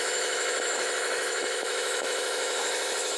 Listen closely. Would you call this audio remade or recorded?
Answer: remade